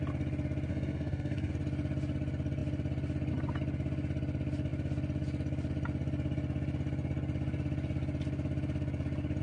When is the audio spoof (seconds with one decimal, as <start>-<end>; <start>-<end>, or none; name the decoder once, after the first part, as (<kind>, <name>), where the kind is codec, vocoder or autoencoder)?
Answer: 0.7-1.5 (codec, SNAC)